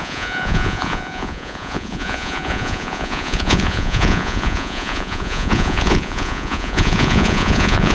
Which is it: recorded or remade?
remade